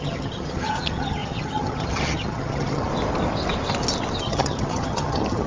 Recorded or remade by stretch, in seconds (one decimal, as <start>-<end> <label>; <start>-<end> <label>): 0.0-2.9 remade; 2.9-4.2 recorded; 4.2-5.5 remade